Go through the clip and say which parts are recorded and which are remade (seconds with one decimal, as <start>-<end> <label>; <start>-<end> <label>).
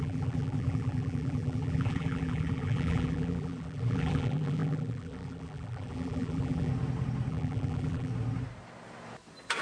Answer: 0.0-6.7 remade; 6.7-7.3 recorded; 7.3-8.1 remade; 8.1-9.6 recorded